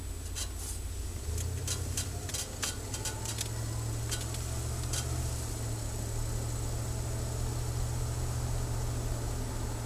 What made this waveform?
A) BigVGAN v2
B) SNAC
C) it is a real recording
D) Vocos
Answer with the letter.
C